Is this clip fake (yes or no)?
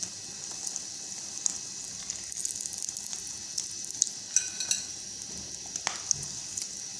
no